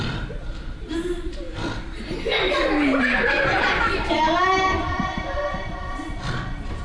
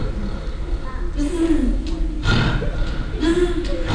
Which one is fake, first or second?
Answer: first